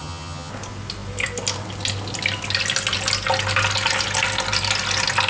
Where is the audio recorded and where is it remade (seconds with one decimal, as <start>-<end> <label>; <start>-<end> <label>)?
0.0-0.5 remade; 0.5-5.3 recorded